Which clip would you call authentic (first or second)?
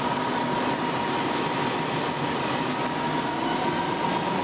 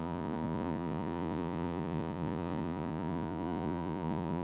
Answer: first